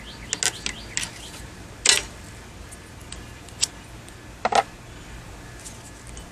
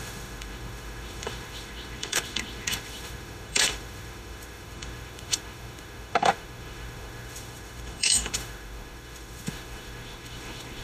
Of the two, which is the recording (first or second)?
first